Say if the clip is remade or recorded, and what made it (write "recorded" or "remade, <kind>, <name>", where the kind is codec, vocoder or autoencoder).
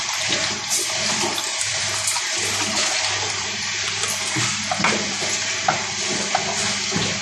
recorded